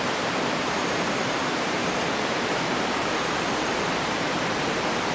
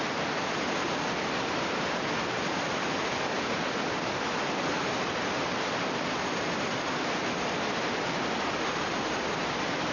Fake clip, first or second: first